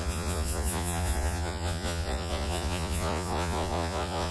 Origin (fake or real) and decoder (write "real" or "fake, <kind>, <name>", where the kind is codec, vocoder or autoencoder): fake, vocoder, Vocos